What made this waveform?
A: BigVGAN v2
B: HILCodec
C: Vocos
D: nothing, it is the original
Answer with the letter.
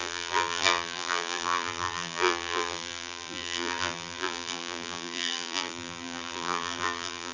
A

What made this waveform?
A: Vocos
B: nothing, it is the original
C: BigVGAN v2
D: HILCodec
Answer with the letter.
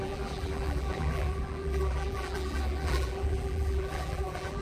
C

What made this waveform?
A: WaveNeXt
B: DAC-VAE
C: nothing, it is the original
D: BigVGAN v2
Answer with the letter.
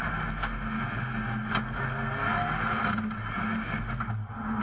C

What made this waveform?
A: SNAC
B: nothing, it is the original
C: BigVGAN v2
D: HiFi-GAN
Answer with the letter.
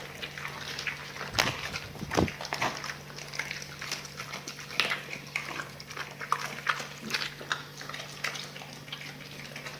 B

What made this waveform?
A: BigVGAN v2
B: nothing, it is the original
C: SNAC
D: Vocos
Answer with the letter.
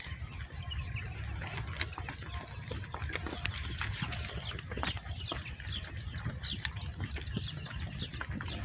B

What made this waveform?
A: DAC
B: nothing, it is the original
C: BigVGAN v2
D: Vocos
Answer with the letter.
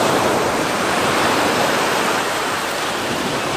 C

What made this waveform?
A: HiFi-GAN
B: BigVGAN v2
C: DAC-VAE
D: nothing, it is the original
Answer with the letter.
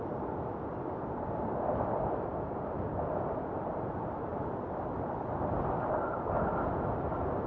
D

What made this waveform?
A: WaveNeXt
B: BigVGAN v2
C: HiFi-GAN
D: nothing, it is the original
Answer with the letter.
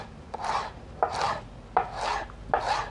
D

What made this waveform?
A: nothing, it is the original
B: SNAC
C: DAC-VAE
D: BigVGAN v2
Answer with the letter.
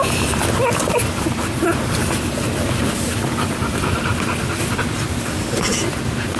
D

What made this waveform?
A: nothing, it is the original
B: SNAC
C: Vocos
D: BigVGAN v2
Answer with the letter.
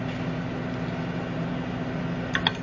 A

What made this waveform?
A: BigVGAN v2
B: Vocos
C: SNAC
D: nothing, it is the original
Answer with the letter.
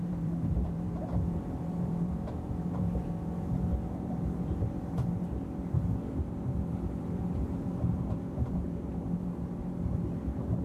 A